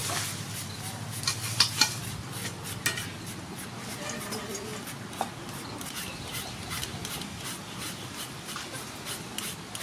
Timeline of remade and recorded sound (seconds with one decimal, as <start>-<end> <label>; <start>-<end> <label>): 0.0-9.8 recorded

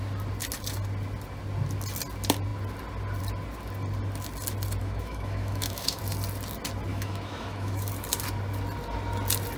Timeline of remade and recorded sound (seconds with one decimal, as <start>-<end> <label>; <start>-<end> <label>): 0.0-4.8 recorded; 4.8-6.0 remade; 6.0-6.9 recorded; 6.9-7.9 remade; 7.9-9.6 recorded

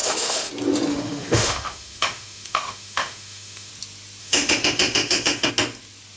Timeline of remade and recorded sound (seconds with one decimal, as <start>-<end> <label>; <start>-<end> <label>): 0.0-0.5 remade; 0.5-0.9 recorded; 0.9-3.7 remade; 3.7-4.2 recorded; 4.2-5.5 remade; 5.5-6.2 recorded

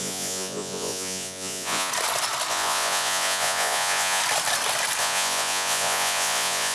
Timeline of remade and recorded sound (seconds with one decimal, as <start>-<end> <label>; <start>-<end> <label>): 0.0-1.9 remade; 1.9-2.5 recorded; 2.5-4.2 remade; 4.2-5.0 recorded; 5.0-6.7 remade

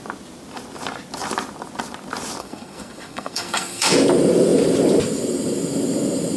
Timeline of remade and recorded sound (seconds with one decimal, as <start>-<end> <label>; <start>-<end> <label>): 0.0-2.4 recorded; 2.4-3.9 remade; 3.9-6.4 recorded

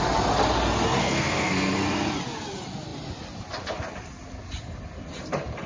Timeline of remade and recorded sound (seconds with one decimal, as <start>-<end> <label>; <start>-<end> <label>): 0.0-1.0 recorded; 1.0-1.7 remade; 1.7-5.7 recorded